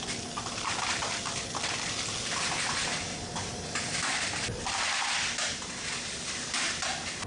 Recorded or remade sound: recorded